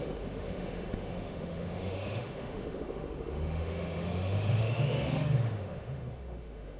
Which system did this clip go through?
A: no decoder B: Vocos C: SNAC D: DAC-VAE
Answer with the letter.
D